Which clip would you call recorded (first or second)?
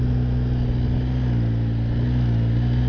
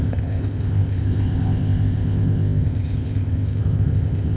first